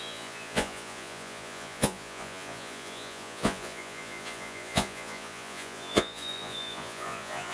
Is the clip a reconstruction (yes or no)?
yes